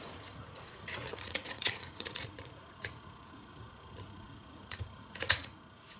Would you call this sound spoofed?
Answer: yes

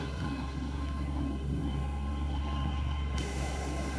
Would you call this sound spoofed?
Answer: yes